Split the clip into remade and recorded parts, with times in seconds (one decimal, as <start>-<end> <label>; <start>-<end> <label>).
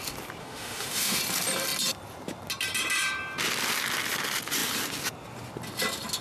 0.0-0.4 recorded; 0.4-1.2 remade; 1.2-6.2 recorded